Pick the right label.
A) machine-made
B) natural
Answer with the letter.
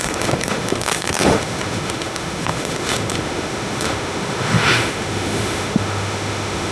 A